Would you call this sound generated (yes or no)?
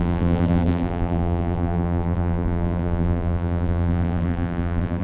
yes